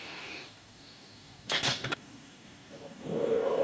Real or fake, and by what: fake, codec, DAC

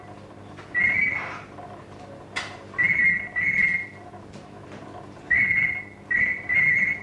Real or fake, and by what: real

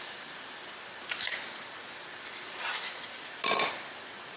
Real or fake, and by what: real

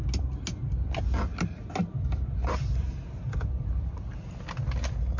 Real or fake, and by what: real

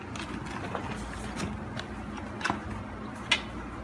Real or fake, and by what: real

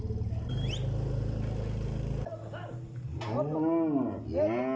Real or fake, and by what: real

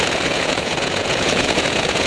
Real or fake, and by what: fake, vocoder, Vocos